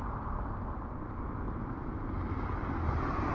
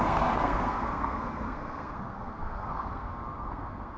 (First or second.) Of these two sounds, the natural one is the first